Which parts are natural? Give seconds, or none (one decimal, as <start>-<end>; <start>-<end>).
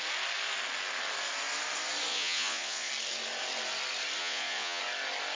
0.0-2.1; 2.9-4.2; 4.8-5.3